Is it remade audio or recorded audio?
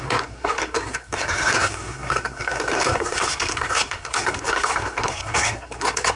remade